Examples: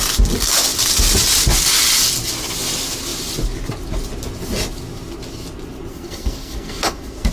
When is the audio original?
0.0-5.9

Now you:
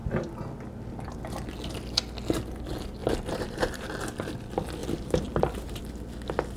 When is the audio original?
0.0-3.0; 4.0-4.8; 5.8-6.6

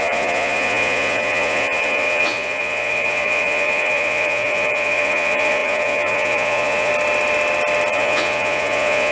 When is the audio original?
6.9-7.9

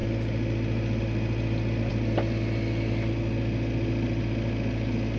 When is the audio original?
0.0-5.2

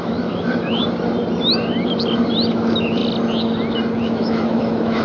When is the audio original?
0.8-2.5; 3.0-4.0